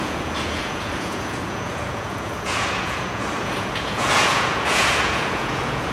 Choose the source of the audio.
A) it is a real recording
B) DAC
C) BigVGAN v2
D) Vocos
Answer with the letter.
D